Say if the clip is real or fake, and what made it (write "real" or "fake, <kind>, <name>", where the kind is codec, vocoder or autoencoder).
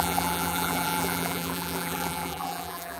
fake, vocoder, BigVGAN v2